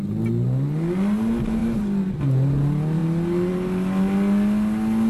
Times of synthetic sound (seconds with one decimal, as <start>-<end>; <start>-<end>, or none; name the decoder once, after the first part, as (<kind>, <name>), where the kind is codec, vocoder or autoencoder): none